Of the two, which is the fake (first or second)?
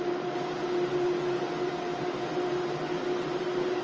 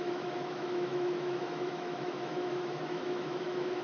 second